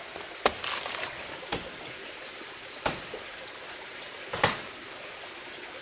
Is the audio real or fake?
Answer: real